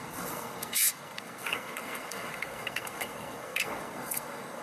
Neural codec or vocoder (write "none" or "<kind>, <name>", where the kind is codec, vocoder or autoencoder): codec, SNAC